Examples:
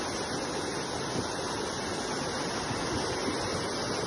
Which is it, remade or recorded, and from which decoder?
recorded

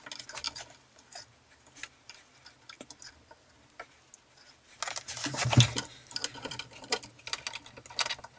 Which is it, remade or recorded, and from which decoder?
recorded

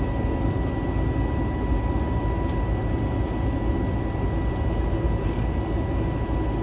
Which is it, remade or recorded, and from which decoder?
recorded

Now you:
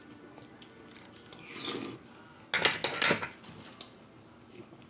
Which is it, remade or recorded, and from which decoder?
recorded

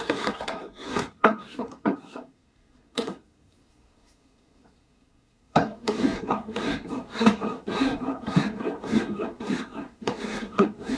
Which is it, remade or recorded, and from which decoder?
remade, codec, SNAC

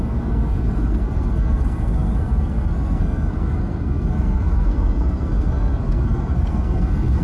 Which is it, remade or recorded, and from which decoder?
remade, codec, SNAC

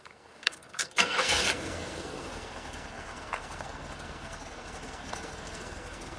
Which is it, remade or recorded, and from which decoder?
remade, codec, SNAC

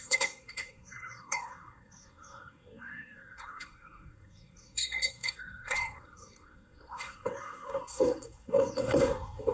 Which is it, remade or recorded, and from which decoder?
remade, codec, SNAC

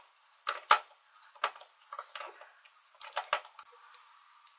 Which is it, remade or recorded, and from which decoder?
recorded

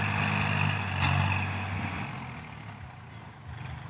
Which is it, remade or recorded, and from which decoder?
recorded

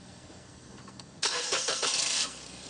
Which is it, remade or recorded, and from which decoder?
remade, codec, SNAC